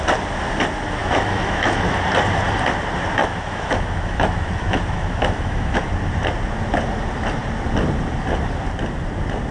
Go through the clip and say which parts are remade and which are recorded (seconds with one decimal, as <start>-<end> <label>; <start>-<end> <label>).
0.0-1.0 recorded; 1.0-2.0 remade; 2.0-3.2 recorded; 3.2-5.9 remade; 5.9-9.5 recorded